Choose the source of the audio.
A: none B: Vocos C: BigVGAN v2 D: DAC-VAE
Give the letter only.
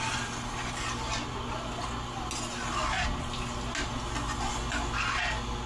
A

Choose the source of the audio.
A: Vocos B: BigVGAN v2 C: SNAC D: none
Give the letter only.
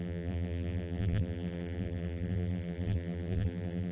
B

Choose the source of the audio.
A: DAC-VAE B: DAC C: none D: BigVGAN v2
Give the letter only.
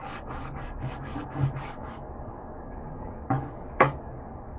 B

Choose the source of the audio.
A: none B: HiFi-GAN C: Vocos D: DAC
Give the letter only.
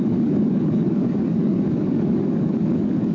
D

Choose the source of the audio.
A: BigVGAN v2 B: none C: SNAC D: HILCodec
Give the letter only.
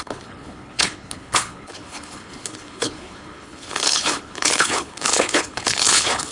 D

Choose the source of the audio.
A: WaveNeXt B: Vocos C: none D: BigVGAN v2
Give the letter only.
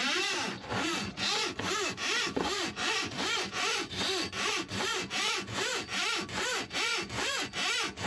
B